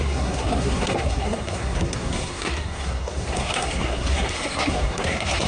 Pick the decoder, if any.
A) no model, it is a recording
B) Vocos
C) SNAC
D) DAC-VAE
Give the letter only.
C